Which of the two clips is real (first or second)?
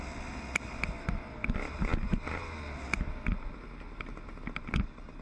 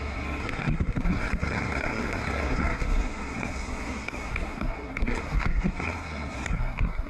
first